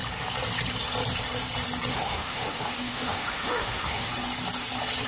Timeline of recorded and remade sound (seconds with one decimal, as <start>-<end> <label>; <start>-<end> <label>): 0.0-1.9 recorded; 1.9-4.1 remade; 4.1-5.1 recorded